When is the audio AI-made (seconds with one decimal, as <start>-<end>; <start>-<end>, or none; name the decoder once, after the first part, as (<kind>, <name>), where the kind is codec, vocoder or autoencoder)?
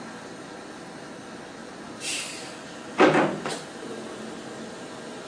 1.6-3.7 (vocoder, BigVGAN v2)